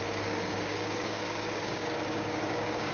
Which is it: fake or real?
fake